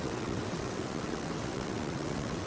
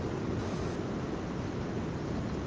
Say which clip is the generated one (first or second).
first